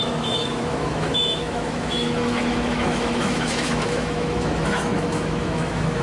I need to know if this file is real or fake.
fake